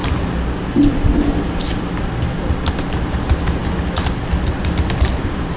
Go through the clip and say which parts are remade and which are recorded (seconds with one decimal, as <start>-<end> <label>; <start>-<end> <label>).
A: 0.0-5.6 recorded

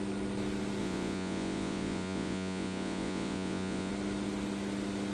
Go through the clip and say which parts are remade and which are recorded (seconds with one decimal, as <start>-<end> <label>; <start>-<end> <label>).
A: 0.0-0.8 recorded; 0.8-3.9 remade; 3.9-5.1 recorded

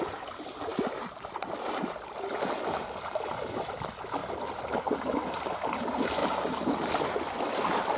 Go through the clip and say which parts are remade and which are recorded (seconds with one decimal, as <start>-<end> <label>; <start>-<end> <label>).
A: 0.0-0.7 recorded; 0.7-1.8 remade; 1.8-4.2 recorded; 4.2-5.7 remade; 5.7-8.0 recorded

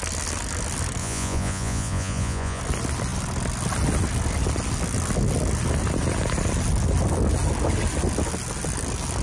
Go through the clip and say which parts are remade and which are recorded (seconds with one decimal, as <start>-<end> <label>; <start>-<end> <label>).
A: 0.0-1.0 recorded; 1.0-2.6 remade; 2.6-9.2 recorded

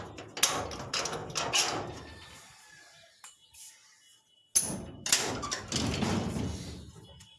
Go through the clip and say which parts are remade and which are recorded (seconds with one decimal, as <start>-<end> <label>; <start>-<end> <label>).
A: 0.0-7.4 recorded

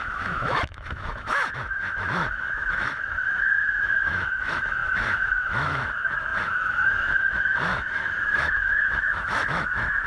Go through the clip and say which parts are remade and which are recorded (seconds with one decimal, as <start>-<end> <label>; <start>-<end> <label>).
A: 0.0-10.1 remade

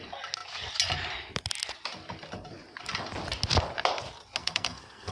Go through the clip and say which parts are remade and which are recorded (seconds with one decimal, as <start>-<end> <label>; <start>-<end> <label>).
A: 0.0-4.4 recorded; 4.4-5.1 remade